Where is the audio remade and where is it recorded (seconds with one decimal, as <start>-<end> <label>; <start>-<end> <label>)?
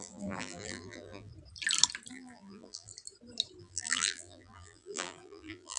0.0-1.3 remade; 1.3-2.1 recorded; 2.1-2.9 remade; 2.9-3.6 recorded; 3.6-5.8 remade